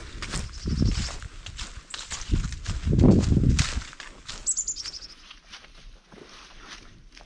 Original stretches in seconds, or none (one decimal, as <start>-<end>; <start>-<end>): 0.0-7.3